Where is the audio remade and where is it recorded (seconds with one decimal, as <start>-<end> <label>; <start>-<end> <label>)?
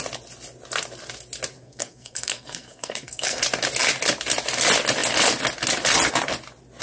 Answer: 0.0-1.6 recorded; 1.6-3.4 remade; 3.4-6.8 recorded